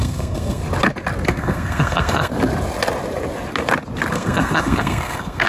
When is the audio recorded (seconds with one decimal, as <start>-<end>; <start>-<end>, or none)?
0.6-1.3; 2.3-4.1